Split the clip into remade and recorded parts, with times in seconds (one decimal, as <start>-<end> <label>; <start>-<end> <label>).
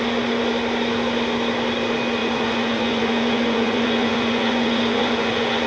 0.0-2.2 recorded; 2.2-5.7 remade